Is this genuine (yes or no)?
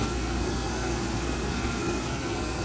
no